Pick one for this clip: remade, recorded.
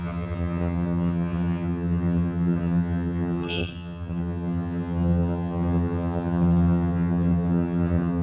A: remade